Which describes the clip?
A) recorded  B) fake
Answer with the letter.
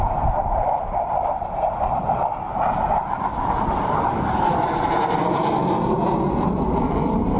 A